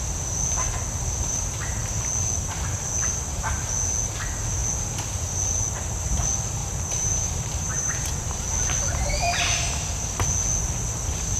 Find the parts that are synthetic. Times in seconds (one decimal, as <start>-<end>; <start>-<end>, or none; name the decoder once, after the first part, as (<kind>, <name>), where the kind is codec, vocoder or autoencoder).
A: 6.6-8.1 (vocoder, BigVGAN v2)